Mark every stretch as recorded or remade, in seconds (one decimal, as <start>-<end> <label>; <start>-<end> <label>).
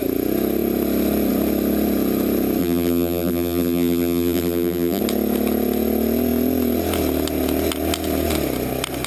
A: 0.0-2.6 recorded; 2.6-5.0 remade; 5.0-9.1 recorded